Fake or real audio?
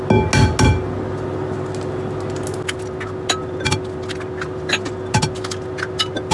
real